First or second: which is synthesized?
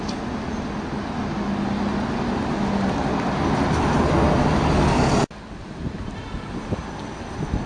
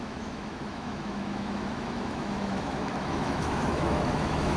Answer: second